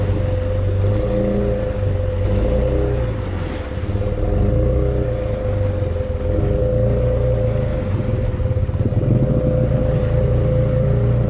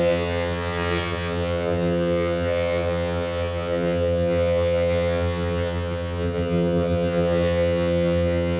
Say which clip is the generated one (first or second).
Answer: second